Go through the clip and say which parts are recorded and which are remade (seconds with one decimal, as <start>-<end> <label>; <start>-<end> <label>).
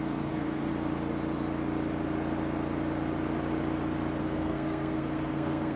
0.0-0.7 remade; 0.7-4.2 recorded; 4.2-5.8 remade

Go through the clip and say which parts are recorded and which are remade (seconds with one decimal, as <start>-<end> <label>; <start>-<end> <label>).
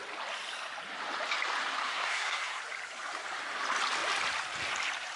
0.0-1.8 recorded; 1.8-2.6 remade; 2.6-5.2 recorded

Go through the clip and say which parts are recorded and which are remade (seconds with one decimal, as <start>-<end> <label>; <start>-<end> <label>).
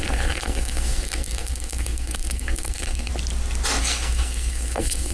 0.0-3.1 remade; 3.1-3.8 recorded; 3.8-5.1 remade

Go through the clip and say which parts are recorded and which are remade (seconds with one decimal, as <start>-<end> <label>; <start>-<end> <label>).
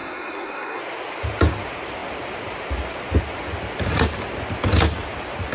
0.0-0.8 remade; 0.8-5.5 recorded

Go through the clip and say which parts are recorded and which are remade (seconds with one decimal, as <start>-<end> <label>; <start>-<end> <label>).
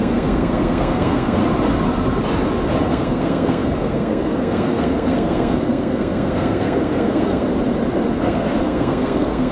0.0-1.4 remade; 1.4-2.9 recorded; 2.9-7.5 remade; 7.5-8.1 recorded; 8.1-9.5 remade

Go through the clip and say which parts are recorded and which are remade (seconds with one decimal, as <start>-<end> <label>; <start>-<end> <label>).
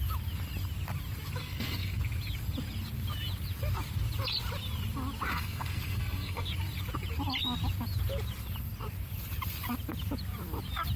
0.0-1.4 recorded; 1.4-2.0 remade; 2.0-5.3 recorded; 5.3-6.5 remade; 6.5-11.0 recorded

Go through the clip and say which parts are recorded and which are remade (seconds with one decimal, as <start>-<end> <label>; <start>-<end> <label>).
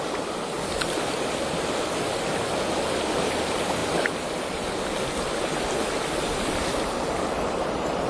0.0-8.1 recorded